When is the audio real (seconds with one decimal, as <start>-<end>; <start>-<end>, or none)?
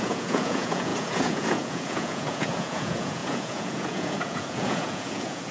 none